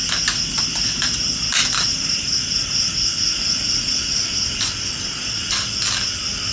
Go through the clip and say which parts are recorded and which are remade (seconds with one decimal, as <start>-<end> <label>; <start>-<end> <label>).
0.0-1.9 recorded; 1.9-4.6 remade; 4.6-6.5 recorded